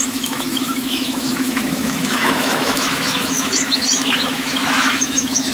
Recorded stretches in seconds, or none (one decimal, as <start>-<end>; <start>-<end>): none